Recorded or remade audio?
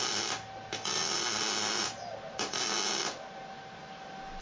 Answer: recorded